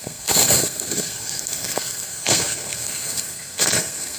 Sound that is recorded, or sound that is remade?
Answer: remade